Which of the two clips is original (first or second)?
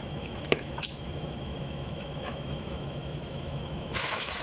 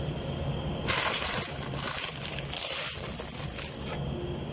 second